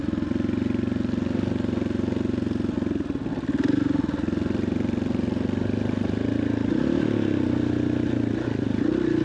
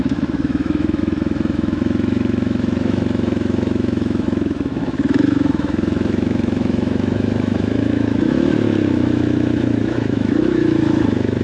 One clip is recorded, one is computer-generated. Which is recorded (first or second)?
first